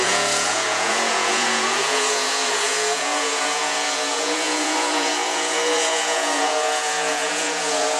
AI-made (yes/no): yes